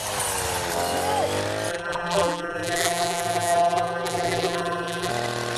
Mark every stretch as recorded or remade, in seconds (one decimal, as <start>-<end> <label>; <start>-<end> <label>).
0.0-1.7 recorded; 1.7-5.1 remade; 5.1-5.6 recorded